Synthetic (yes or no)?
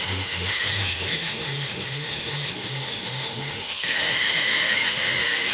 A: yes